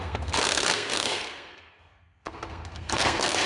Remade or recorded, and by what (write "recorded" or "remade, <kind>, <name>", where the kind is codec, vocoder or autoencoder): remade, codec, SNAC